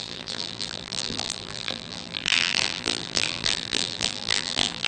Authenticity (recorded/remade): remade